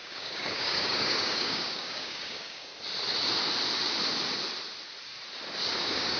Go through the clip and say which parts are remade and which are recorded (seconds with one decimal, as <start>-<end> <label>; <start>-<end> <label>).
0.0-2.7 remade; 2.7-5.7 recorded; 5.7-6.2 remade